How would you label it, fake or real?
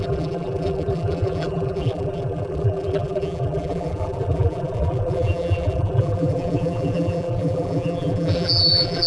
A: fake